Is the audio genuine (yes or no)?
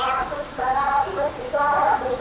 no